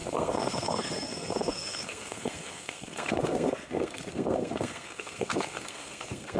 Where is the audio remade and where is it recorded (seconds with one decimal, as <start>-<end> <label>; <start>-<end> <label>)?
0.0-6.4 remade